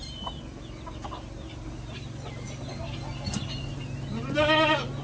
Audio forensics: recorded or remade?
recorded